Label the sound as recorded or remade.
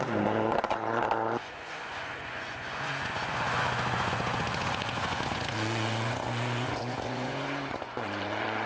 remade